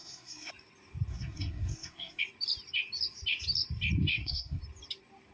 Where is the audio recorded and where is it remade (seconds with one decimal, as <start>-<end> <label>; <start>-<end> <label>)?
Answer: 0.0-0.5 remade; 0.5-1.1 recorded; 1.1-2.2 remade; 2.2-4.1 recorded; 4.1-4.6 remade; 4.6-5.3 recorded